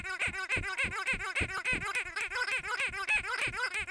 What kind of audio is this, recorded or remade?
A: recorded